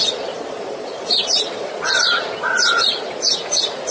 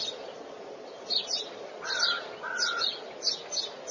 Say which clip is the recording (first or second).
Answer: second